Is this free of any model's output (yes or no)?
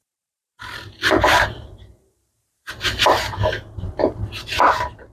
no